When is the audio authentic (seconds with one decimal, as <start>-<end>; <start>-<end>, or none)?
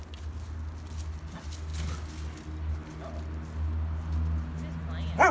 0.0-5.3